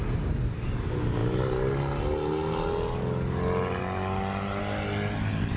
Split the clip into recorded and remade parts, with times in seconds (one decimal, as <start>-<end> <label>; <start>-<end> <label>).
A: 0.0-5.6 recorded